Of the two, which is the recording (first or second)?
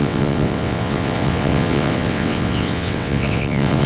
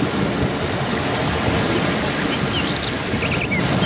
second